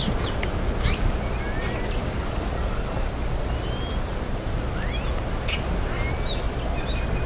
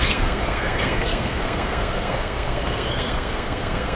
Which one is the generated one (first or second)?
second